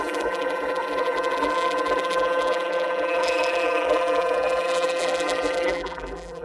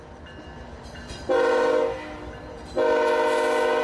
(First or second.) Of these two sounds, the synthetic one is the first